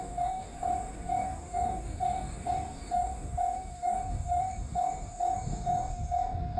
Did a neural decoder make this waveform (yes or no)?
yes